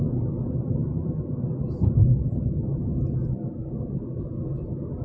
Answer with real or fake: real